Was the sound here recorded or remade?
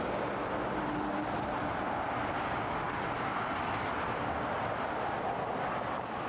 recorded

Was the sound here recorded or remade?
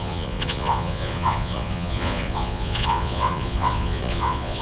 remade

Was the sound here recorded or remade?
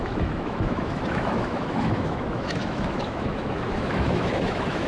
remade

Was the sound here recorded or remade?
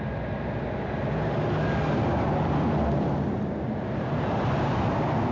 recorded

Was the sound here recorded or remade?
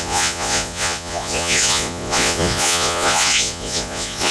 remade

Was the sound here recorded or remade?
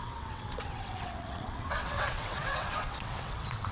remade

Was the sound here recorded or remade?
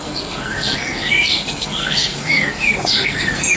remade